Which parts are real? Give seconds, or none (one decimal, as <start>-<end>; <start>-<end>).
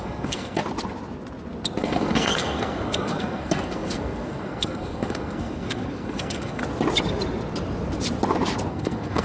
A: 0.6-1.8; 6.6-8.7